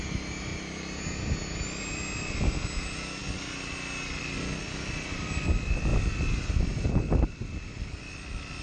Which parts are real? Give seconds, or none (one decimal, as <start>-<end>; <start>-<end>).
0.0-0.5; 1.0-5.9; 8.0-8.6